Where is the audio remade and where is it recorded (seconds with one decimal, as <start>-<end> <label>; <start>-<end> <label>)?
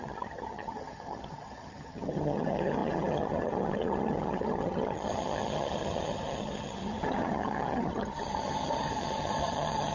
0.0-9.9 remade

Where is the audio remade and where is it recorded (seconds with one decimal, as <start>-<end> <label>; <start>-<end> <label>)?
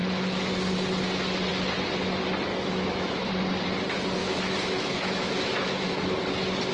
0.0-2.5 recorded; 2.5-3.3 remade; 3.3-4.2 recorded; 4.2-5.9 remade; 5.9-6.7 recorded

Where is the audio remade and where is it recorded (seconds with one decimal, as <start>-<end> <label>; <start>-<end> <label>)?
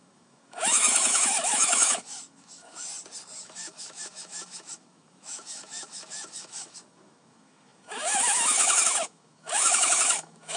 0.0-2.9 remade; 2.9-3.4 recorded; 3.4-10.6 remade